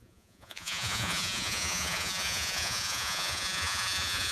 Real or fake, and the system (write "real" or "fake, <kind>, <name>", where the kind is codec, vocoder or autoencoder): fake, vocoder, Vocos